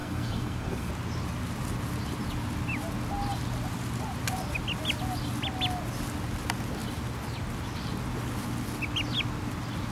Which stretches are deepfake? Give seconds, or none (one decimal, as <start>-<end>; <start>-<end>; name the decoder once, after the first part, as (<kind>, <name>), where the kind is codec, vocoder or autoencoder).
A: 0.0-0.9 (codec, SNAC)